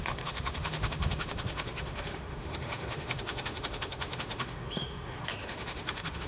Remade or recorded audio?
remade